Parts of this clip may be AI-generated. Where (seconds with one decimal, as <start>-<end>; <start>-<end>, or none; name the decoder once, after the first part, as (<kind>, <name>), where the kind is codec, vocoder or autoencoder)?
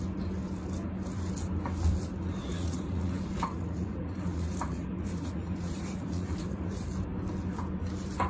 2.4-6.8 (vocoder, Vocos)